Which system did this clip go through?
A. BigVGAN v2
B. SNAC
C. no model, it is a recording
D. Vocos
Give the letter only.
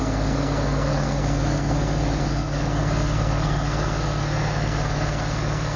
B